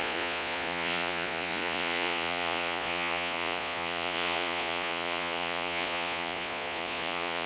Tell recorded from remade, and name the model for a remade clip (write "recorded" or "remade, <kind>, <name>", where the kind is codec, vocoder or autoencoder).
remade, vocoder, Vocos